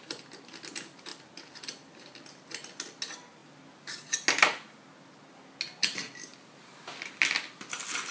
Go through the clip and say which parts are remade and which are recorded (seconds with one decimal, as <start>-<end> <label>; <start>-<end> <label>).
0.0-8.1 recorded